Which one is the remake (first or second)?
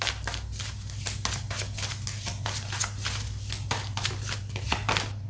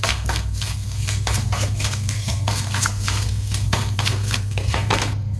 second